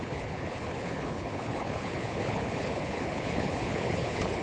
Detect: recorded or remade remade